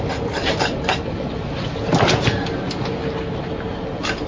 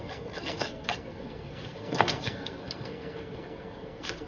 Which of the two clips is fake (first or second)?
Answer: second